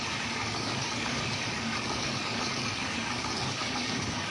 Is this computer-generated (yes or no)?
yes